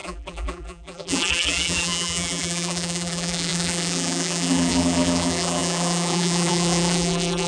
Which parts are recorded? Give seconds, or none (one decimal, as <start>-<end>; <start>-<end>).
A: none